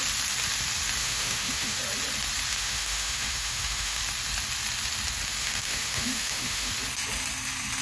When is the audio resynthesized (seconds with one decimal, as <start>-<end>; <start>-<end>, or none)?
1.0-1.8; 2.5-4.0; 5.4-6.7